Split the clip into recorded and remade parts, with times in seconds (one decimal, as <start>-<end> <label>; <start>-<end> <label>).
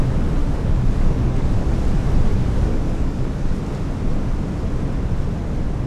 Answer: 0.0-0.4 recorded; 0.4-1.7 remade; 1.7-2.3 recorded; 2.3-3.6 remade; 3.6-5.9 recorded